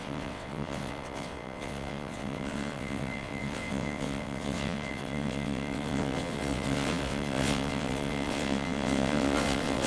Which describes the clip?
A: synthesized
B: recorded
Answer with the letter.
A